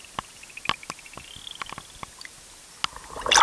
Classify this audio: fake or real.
real